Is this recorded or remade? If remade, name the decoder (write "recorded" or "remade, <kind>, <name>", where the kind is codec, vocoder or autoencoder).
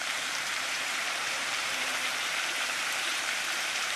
remade, vocoder, BigVGAN v2